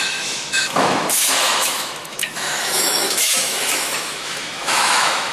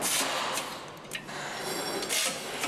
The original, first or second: second